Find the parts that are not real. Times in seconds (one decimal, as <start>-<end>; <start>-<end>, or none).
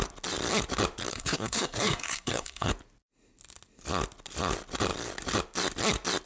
1.1-2.7